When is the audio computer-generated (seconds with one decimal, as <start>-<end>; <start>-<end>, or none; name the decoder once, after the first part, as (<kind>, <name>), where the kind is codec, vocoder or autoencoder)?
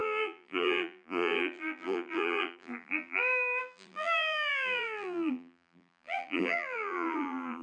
0.0-7.6 (vocoder, BigVGAN v2)